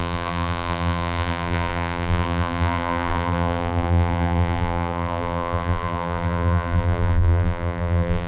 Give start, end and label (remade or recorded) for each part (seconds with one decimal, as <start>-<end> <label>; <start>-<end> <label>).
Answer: 0.0-8.3 remade